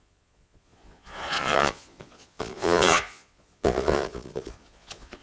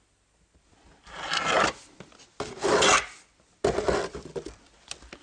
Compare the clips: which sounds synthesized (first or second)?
first